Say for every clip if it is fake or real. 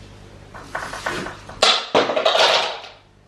real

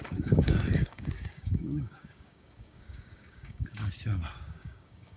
fake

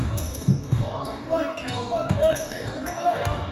fake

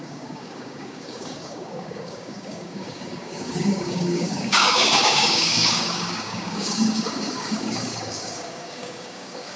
fake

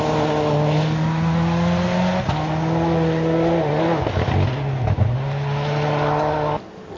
real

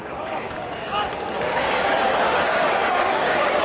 fake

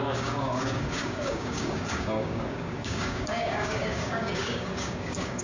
fake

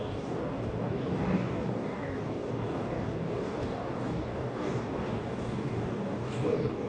fake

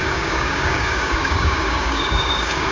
fake